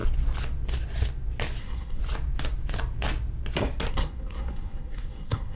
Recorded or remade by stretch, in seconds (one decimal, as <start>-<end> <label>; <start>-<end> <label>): 0.0-1.6 recorded; 1.6-2.0 remade; 2.0-3.9 recorded; 3.9-5.6 remade

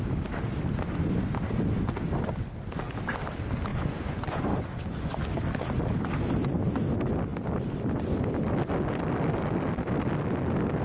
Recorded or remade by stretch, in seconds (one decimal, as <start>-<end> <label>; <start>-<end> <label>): 0.0-3.7 recorded; 3.7-5.3 remade; 5.3-10.8 recorded

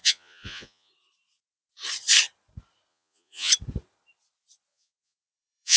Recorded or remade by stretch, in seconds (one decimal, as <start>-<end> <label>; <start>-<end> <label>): 0.0-0.9 remade; 0.9-2.9 recorded; 2.9-3.5 remade; 3.5-4.7 recorded; 4.7-5.8 remade

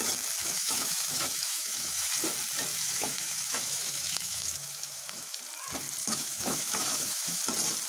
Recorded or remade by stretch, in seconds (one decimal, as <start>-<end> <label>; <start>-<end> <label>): 0.0-0.4 recorded; 0.4-2.1 remade; 2.1-2.7 recorded; 2.7-5.4 remade; 5.4-6.0 recorded; 6.0-7.4 remade; 7.4-7.9 recorded

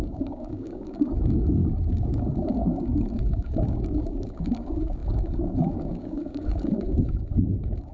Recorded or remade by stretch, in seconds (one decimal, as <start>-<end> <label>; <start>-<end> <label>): 0.0-7.9 remade

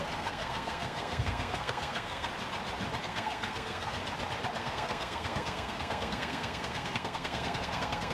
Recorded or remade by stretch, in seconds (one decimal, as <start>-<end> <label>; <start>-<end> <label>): 0.0-2.3 remade; 2.3-3.0 recorded; 3.0-4.0 remade; 4.0-4.6 recorded; 4.6-8.1 remade

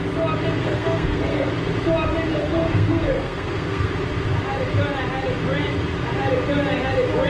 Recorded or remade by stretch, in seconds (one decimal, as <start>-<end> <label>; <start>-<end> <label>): 0.0-0.6 recorded; 0.6-1.5 remade; 1.5-2.3 recorded; 2.3-3.9 remade; 3.9-7.3 recorded

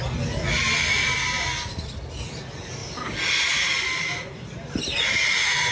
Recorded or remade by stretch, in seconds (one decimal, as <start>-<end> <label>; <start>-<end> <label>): 0.0-5.7 recorded